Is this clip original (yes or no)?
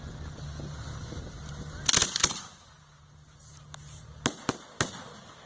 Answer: yes